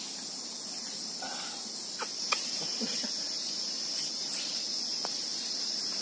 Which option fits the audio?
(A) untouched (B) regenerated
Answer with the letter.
A